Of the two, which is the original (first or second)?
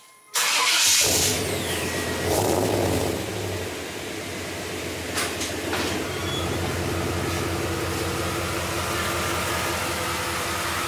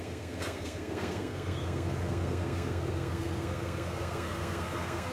first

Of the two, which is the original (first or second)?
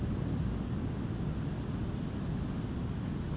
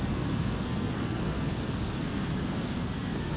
first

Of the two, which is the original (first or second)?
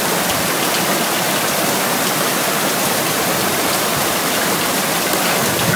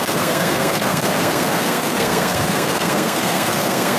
first